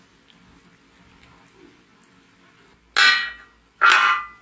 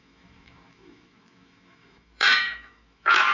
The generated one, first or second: second